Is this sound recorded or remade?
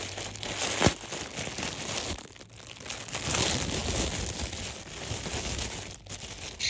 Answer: recorded